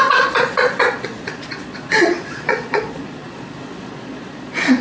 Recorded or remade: remade